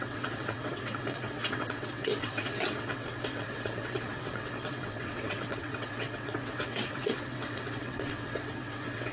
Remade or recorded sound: remade